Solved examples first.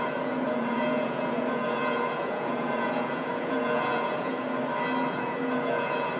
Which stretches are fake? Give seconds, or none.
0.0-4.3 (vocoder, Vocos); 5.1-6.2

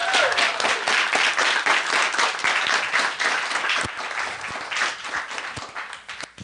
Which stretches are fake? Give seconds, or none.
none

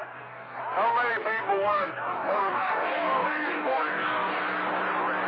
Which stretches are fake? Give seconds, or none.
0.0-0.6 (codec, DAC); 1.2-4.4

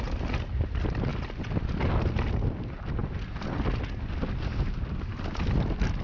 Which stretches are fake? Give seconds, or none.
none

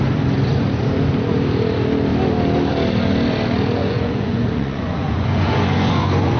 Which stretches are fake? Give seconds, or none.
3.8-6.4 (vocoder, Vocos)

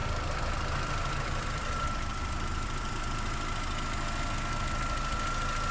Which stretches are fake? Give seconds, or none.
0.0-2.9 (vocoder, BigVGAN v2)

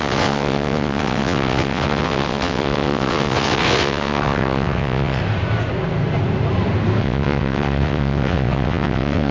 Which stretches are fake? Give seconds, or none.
0.0-5.2 (vocoder, WaveNeXt); 7.0-9.3